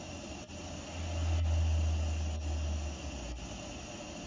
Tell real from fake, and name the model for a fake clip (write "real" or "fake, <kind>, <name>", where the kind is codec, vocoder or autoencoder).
real